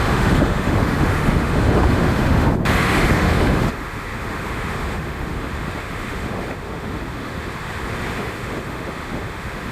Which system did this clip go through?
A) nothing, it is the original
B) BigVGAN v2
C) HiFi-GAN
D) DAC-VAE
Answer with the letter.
D